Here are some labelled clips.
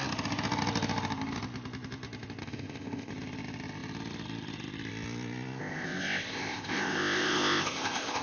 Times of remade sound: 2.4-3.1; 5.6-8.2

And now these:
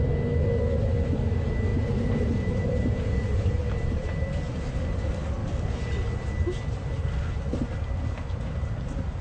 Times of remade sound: 1.7-3.7

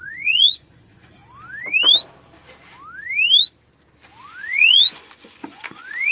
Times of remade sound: 0.0-1.2; 4.2-6.1

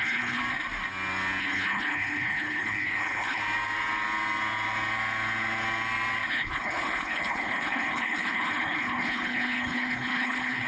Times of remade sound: 0.0-0.4; 1.4-3.4; 6.3-10.7

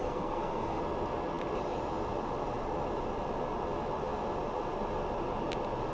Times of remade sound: 0.0-0.8

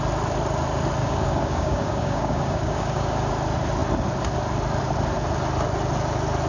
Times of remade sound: 1.0-3.3